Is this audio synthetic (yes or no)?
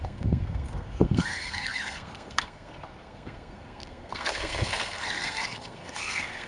yes